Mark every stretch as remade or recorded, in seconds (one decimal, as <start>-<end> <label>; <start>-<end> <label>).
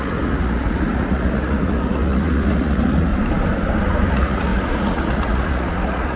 0.0-3.1 remade; 3.1-4.1 recorded; 4.1-6.2 remade